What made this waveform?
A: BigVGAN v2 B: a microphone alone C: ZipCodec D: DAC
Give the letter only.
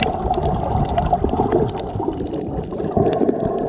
B